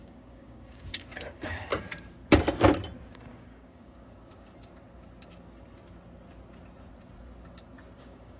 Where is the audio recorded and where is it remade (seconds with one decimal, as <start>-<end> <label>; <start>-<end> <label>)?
0.0-1.7 remade; 1.7-3.1 recorded; 3.1-4.7 remade; 4.7-8.0 recorded; 8.0-8.4 remade